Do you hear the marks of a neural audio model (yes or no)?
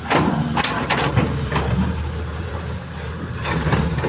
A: yes